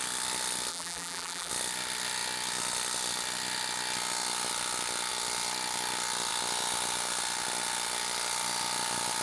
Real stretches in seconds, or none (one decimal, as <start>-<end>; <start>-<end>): 0.0-0.7; 1.5-9.2